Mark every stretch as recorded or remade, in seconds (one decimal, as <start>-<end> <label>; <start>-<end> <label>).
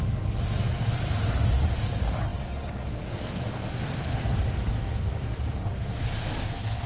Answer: 0.0-6.9 recorded